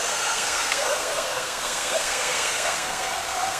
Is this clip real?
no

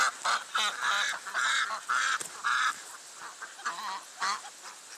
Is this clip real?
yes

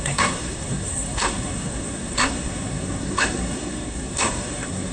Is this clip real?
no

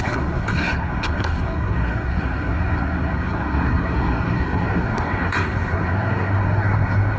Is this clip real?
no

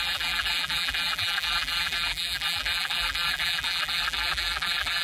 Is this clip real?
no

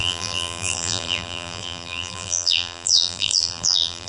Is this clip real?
no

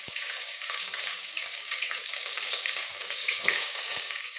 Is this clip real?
no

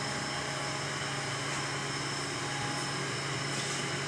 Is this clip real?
yes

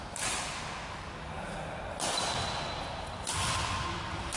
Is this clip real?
yes